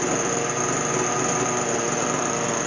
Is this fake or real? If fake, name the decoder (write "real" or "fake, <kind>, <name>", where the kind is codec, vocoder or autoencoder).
real